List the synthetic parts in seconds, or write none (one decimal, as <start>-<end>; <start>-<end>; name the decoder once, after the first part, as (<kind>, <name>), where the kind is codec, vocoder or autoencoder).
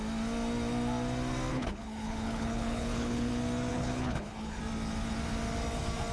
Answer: 1.5-3.3 (codec, HILCodec); 3.7-4.6